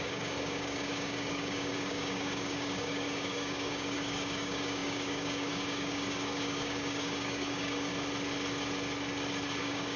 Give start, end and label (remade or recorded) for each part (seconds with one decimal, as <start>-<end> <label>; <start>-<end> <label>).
0.0-7.9 remade; 7.9-9.6 recorded; 9.6-10.0 remade